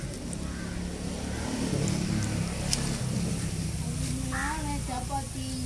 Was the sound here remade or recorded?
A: recorded